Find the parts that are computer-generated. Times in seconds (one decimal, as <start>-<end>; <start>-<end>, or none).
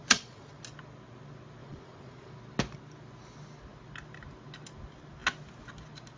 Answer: 0.0-0.6; 1.6-2.3